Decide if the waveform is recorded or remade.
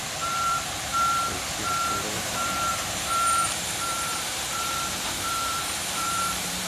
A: remade